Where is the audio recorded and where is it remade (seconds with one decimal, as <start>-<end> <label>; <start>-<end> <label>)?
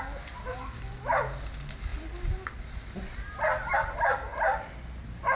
0.0-0.6 recorded; 0.6-1.1 remade; 1.1-5.4 recorded